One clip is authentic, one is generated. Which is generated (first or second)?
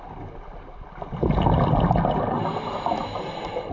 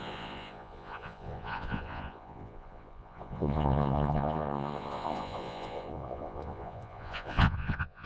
second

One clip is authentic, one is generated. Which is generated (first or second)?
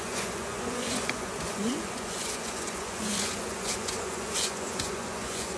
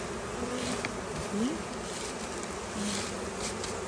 first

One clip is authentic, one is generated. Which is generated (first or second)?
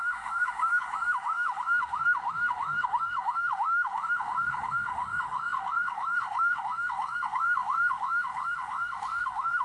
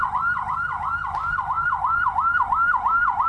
first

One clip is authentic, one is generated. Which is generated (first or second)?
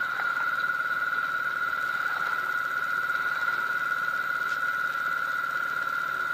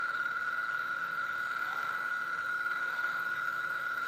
second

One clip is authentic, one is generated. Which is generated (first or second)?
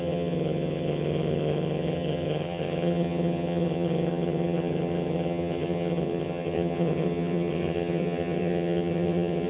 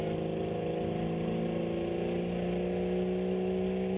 first